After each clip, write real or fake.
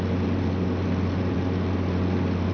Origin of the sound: fake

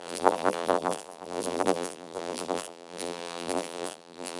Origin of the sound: fake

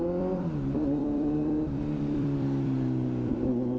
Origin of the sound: fake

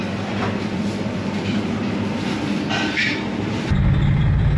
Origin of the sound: fake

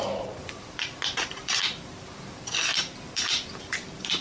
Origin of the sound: fake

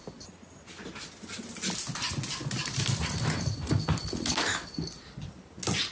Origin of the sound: real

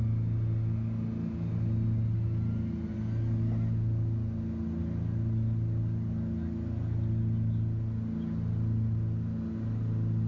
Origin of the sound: real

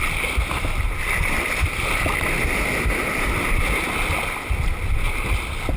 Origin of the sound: real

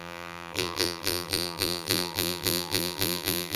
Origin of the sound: fake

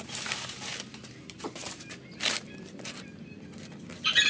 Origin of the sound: fake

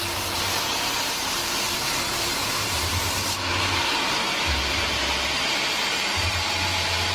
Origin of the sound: fake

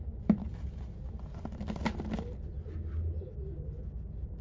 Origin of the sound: real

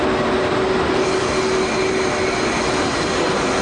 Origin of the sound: real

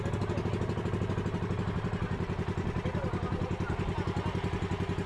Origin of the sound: real